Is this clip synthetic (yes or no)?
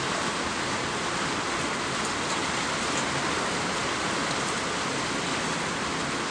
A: no